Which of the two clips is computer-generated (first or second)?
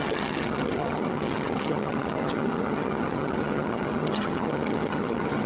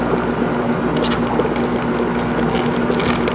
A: first